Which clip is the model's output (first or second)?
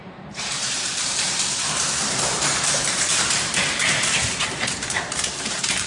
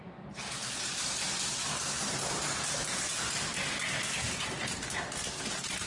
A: first